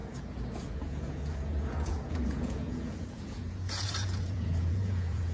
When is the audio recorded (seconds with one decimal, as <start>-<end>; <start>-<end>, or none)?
none